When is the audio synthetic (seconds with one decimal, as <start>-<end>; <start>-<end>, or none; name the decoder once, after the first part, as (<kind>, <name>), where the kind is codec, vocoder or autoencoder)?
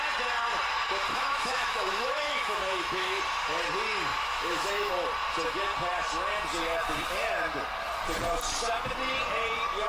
1.1-3.2 (autoencoder, DAC-VAE); 4.1-4.9